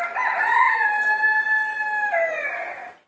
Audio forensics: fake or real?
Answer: real